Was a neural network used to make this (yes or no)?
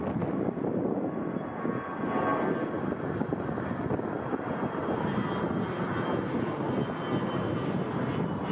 no